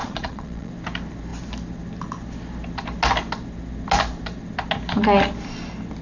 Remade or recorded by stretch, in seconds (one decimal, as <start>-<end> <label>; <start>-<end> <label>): 0.0-0.7 remade; 0.7-6.0 recorded